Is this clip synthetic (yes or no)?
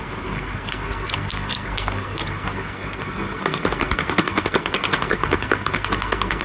yes